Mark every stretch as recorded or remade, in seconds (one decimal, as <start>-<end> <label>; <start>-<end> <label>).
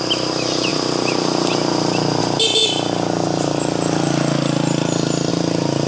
0.0-5.9 recorded